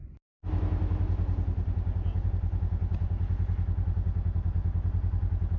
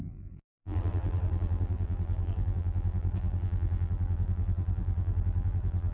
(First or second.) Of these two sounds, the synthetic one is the second